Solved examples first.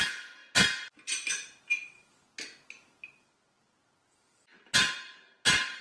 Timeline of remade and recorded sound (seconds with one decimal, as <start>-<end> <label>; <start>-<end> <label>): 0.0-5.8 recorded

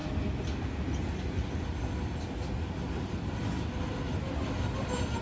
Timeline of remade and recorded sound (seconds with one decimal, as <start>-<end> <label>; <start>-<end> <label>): 0.0-5.2 recorded

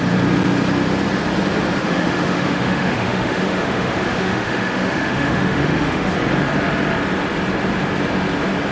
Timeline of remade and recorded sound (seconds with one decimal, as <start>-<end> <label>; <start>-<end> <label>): 0.0-1.8 recorded; 1.8-6.1 remade; 6.1-8.7 recorded

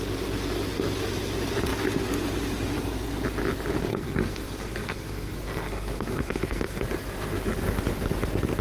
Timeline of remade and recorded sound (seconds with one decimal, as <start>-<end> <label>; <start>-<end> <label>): 0.0-3.9 recorded; 3.9-6.8 remade; 6.8-8.6 recorded

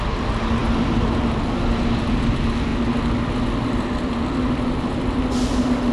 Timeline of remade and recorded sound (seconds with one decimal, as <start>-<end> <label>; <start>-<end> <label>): 0.0-5.9 recorded

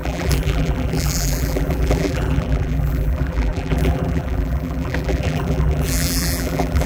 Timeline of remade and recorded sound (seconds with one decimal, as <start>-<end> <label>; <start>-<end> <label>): 0.0-6.9 remade